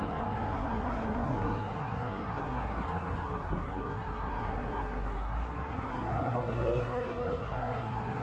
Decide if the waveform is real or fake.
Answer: fake